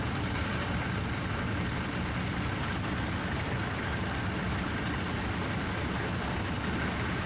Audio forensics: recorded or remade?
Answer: recorded